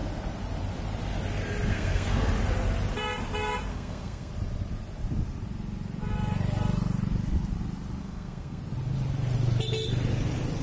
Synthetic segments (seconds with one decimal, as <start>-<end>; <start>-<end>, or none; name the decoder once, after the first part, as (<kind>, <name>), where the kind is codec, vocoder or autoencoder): 1.7-2.3 (codec, SNAC); 3.7-4.3; 8.0-8.6